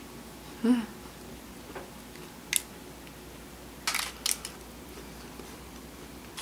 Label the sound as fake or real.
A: real